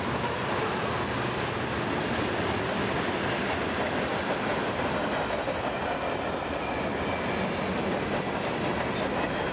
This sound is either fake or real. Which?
real